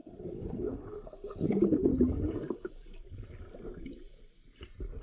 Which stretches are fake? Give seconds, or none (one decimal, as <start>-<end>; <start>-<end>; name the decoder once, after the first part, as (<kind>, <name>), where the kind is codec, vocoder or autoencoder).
0.0-1.9 (codec, HILCodec)